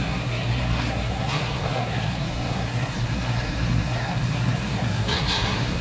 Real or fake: fake